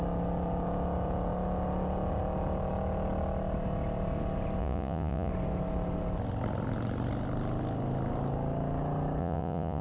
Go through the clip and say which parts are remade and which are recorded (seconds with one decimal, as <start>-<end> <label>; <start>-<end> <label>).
0.0-4.6 recorded; 4.6-5.3 remade; 5.3-9.2 recorded; 9.2-9.8 remade